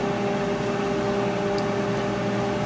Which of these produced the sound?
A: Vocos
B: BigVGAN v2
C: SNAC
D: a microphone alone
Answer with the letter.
D